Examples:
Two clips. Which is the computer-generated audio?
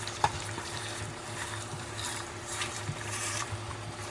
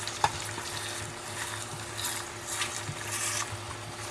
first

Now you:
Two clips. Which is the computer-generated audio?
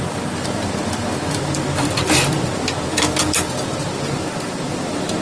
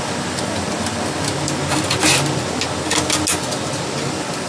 first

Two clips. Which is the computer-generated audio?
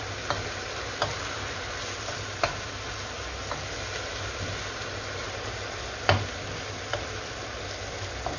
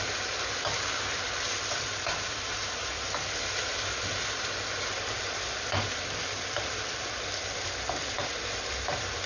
second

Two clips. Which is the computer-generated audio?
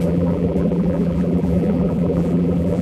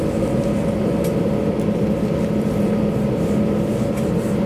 first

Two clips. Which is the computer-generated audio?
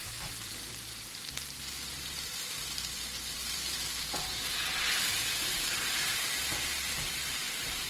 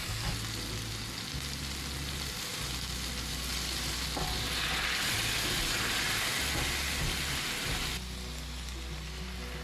first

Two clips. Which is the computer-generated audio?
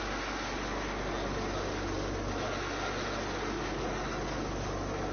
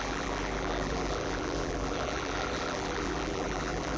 second